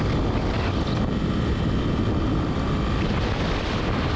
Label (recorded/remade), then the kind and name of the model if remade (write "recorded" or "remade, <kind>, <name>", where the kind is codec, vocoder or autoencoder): recorded